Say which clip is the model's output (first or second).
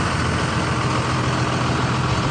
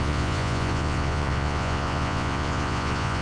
second